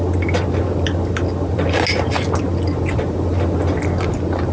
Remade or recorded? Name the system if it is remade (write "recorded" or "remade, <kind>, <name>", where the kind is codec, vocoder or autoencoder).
recorded